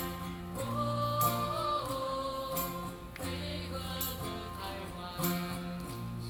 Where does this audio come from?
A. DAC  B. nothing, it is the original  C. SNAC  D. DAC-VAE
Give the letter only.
B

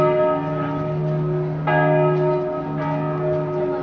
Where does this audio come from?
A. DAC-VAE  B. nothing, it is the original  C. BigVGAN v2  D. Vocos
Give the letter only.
B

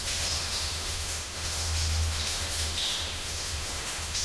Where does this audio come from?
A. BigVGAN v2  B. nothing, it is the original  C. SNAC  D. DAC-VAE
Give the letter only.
D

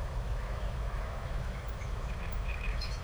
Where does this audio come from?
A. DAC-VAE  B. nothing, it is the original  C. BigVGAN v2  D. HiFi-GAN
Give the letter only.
A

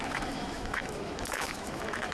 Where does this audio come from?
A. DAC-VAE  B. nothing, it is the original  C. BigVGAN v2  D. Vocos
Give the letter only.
A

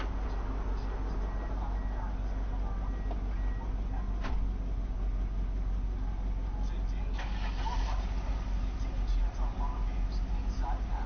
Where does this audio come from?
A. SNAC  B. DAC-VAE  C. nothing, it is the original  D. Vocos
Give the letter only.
C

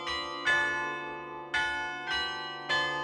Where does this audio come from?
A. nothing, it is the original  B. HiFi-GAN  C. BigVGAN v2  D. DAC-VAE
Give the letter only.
A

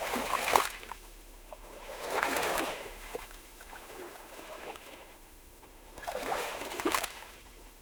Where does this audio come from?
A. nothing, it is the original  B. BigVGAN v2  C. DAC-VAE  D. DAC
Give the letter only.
C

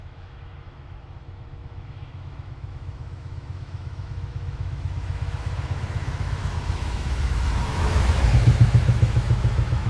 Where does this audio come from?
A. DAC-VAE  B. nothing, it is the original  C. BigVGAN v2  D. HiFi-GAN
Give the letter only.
A